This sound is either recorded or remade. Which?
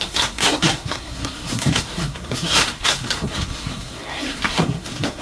remade